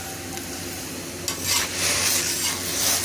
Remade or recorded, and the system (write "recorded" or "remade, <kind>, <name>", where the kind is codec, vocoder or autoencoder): recorded